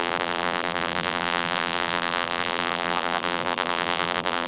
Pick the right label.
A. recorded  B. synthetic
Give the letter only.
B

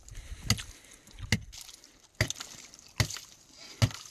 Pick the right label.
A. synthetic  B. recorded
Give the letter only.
B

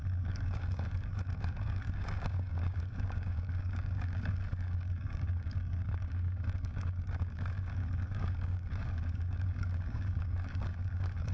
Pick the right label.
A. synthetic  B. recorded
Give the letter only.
A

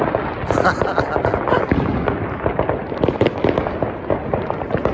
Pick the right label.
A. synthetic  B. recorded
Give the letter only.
B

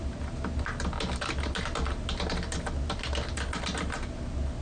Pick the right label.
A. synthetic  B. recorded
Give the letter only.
B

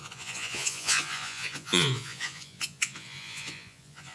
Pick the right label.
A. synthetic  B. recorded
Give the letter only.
A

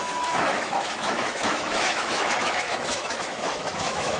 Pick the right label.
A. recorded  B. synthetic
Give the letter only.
B